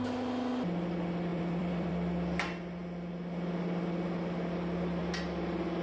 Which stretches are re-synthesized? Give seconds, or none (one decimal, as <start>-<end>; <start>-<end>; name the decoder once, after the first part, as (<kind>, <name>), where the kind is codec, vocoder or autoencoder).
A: 1.3-1.9 (vocoder, BigVGAN v2)